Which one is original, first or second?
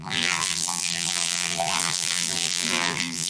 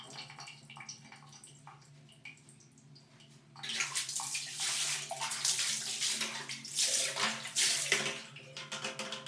second